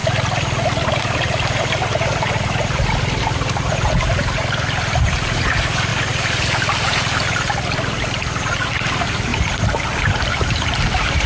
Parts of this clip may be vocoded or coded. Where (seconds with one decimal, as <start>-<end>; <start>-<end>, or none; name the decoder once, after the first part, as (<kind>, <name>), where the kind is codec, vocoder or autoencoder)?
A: 1.0-5.9 (vocoder, BigVGAN v2); 8.7-9.3; 10.0-11.3